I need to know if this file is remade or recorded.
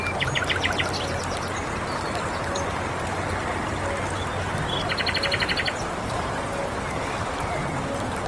recorded